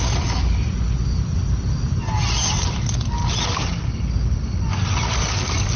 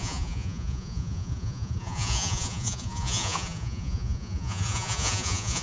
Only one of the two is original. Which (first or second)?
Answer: first